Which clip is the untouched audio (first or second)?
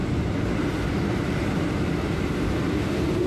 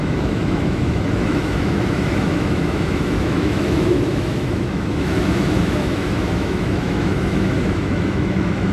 first